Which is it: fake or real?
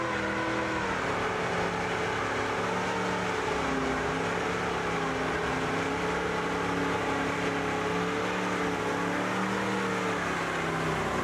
real